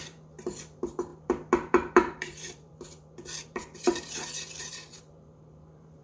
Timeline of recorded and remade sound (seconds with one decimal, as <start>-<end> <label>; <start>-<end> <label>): 0.0-6.0 remade